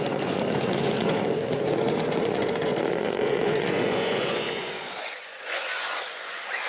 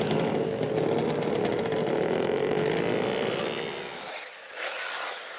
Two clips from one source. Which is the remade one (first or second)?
first